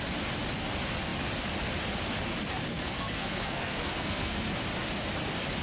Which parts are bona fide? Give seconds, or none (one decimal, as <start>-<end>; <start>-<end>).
0.0-2.7; 4.5-5.6